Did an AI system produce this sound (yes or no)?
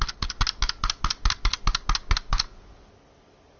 no